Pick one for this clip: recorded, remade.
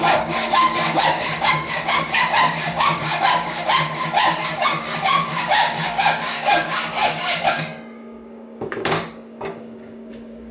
remade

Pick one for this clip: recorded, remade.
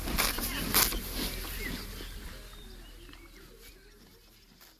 recorded